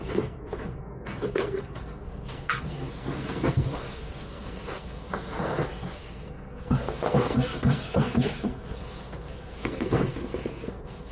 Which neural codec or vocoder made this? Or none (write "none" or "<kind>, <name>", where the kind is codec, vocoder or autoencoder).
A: codec, SNAC